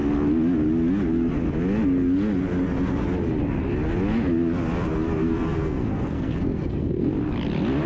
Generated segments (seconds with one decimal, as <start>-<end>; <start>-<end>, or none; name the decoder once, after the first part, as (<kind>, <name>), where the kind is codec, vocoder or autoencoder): 5.2-7.1 (codec, SNAC)